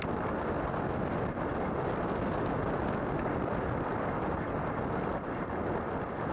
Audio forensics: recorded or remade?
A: recorded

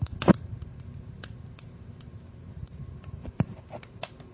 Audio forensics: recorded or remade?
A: remade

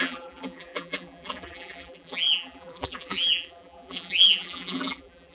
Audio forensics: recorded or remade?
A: remade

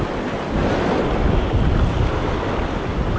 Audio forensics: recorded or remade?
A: recorded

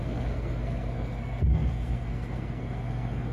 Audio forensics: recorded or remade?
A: remade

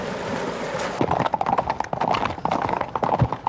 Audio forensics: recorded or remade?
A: recorded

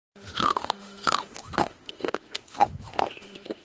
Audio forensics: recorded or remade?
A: remade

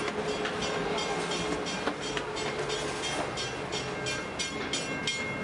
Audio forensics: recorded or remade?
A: recorded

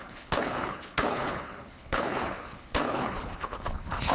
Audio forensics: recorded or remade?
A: remade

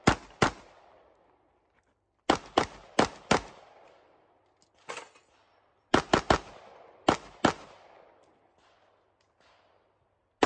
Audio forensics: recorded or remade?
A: recorded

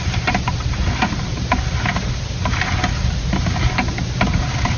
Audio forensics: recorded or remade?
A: recorded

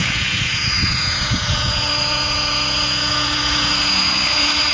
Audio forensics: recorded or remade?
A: remade